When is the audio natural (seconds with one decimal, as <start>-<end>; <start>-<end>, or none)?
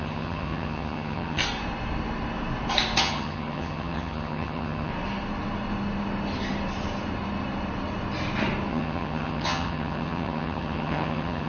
1.4-3.0; 4.9-8.7